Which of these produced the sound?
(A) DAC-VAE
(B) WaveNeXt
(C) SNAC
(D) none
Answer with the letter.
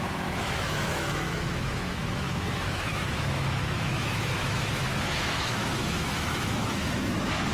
A